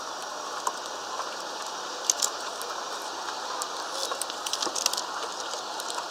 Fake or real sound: real